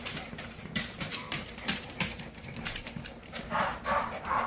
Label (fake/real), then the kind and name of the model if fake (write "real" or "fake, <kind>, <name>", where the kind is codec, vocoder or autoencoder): fake, vocoder, BigVGAN v2